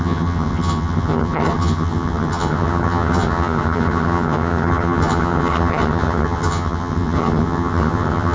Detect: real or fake fake